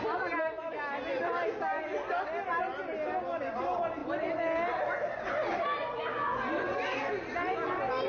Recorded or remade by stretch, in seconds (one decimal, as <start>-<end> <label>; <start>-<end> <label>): 0.0-8.1 recorded